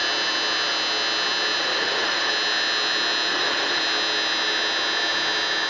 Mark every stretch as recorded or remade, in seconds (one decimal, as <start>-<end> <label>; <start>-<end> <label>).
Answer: 0.0-1.6 recorded; 1.6-2.3 remade; 2.3-3.3 recorded; 3.3-3.8 remade; 3.8-5.7 recorded